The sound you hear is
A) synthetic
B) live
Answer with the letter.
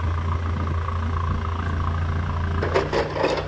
B